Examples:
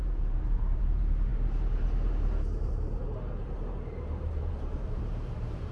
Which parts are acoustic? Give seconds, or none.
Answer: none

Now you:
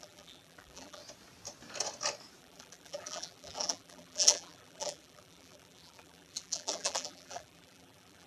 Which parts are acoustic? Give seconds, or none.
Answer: 1.0-2.4